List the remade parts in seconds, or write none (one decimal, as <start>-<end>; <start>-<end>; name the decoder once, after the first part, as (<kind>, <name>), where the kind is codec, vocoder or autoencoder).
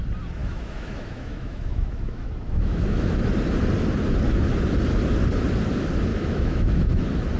0.4-3.2 (autoencoder, DAC-VAE); 6.1-7.0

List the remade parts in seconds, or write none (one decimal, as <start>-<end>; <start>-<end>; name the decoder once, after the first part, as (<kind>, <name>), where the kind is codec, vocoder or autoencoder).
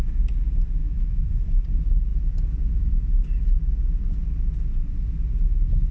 0.8-1.3 (autoencoder, DAC-VAE)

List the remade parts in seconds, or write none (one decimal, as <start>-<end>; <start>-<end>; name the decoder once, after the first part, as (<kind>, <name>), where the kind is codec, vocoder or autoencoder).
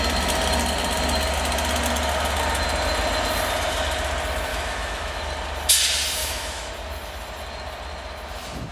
4.5-5.2 (autoencoder, DAC-VAE); 6.2-6.7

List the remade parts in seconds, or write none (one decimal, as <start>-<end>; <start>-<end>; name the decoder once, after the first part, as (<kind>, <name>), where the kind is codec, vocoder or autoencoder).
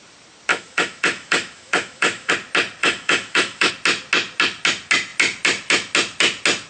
0.5-2.3 (autoencoder, DAC-VAE); 2.8-3.7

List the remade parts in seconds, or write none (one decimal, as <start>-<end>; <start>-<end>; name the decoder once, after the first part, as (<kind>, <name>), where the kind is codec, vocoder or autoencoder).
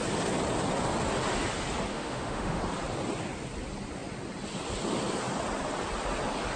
1.9-2.6 (autoencoder, DAC-VAE)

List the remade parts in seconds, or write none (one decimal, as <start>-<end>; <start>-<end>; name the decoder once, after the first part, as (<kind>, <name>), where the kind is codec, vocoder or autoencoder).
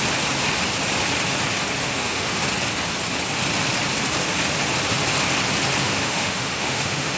1.8-2.4 (autoencoder, DAC-VAE); 5.8-7.2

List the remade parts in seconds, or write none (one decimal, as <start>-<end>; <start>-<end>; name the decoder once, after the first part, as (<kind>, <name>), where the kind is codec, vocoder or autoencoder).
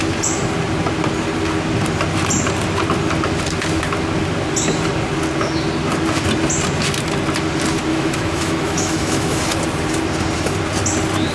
7.9-9.4 (autoencoder, DAC-VAE)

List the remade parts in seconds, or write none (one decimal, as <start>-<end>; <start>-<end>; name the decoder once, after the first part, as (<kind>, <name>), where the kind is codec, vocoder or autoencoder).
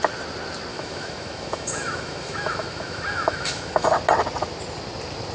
0.7-3.9 (autoencoder, DAC-VAE)